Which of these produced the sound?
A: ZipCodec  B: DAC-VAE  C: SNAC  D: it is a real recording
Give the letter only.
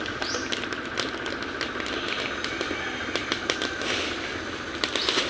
D